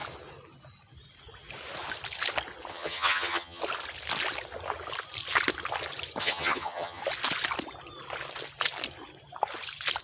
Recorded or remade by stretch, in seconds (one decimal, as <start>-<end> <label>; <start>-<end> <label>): 0.0-2.7 recorded; 2.7-3.6 remade; 3.6-6.2 recorded; 6.2-7.0 remade; 7.0-10.0 recorded